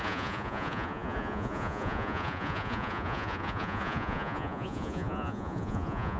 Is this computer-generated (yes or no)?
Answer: yes